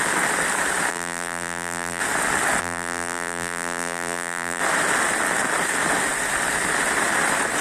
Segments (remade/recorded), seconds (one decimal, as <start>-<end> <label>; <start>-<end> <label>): 0.0-0.9 recorded; 0.9-2.0 remade; 2.0-2.6 recorded; 2.6-4.6 remade; 4.6-7.6 recorded